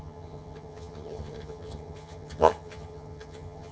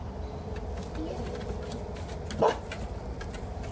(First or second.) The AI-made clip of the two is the first